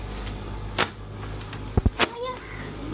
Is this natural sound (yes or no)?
yes